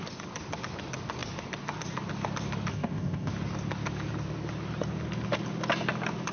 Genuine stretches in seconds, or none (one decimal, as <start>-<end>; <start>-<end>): 0.0-2.7; 3.3-6.3